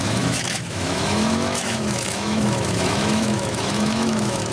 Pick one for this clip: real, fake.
fake